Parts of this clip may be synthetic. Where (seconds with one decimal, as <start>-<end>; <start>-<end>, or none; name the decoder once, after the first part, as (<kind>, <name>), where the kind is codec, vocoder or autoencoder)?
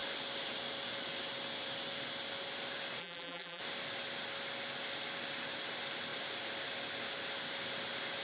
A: 3.0-3.6 (vocoder, BigVGAN v2)